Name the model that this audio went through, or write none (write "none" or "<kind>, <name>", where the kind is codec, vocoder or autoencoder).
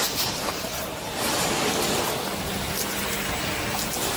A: none